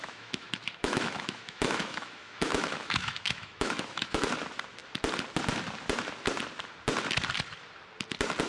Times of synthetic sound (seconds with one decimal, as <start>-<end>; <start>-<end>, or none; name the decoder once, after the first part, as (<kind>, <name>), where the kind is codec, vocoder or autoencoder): 0.0-4.3 (autoencoder, DAC-VAE)